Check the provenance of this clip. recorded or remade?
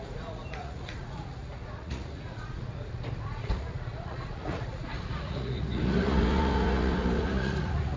remade